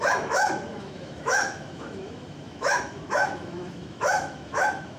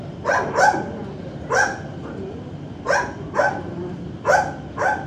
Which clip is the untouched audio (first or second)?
second